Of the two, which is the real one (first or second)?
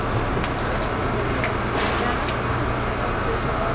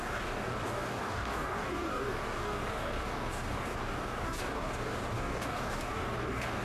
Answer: first